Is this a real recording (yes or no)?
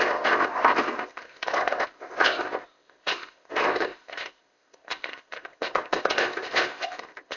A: no